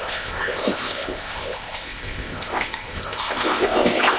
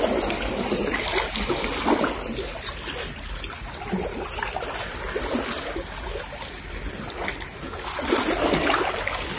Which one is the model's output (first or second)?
first